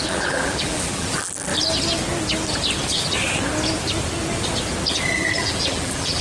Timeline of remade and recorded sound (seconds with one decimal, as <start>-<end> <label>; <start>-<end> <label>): 0.0-1.5 remade; 1.5-4.9 recorded; 4.9-6.2 remade

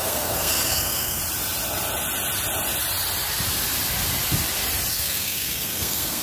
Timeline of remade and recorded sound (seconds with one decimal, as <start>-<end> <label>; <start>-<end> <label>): 0.0-1.2 remade; 1.2-4.9 recorded; 4.9-6.2 remade

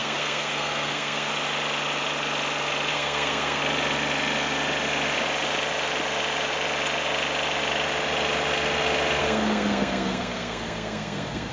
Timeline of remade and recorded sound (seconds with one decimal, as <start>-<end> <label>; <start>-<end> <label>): 0.0-1.3 remade; 1.3-2.9 recorded; 2.9-3.6 remade; 3.6-9.2 recorded; 9.2-11.5 remade

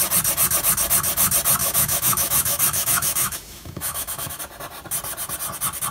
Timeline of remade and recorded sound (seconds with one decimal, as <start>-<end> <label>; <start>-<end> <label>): 0.0-1.6 recorded; 1.6-4.4 remade; 4.4-5.9 recorded

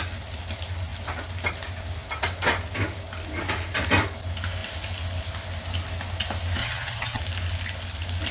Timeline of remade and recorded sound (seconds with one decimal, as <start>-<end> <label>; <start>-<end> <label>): 0.0-6.6 recorded; 6.6-7.2 remade; 7.2-8.3 recorded